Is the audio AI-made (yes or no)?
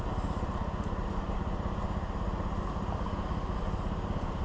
no